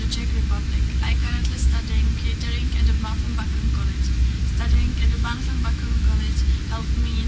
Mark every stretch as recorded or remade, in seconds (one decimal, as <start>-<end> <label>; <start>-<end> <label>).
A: 0.0-1.2 recorded; 1.2-1.9 remade; 1.9-4.9 recorded; 4.9-6.2 remade; 6.2-7.3 recorded